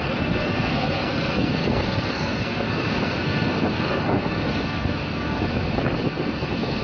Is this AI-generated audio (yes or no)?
yes